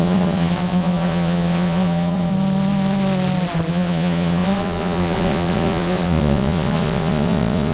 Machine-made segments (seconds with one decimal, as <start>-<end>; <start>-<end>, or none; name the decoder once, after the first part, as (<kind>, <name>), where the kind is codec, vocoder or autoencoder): 0.0-2.3 (vocoder, Vocos); 3.7-7.7